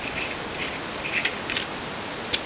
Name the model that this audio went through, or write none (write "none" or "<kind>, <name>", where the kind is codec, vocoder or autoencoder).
none